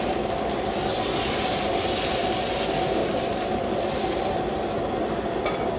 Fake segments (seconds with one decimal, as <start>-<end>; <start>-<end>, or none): 3.0-3.5